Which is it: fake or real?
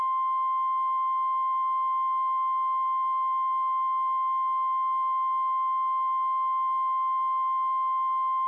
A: real